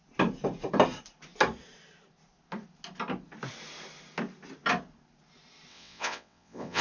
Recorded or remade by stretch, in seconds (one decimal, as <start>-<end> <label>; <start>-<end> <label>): 0.0-5.7 recorded; 5.7-6.8 remade